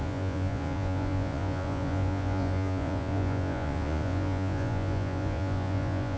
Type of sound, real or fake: fake